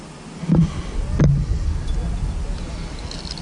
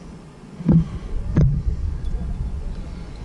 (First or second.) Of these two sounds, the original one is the first